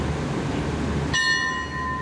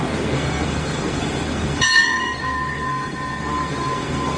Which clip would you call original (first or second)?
first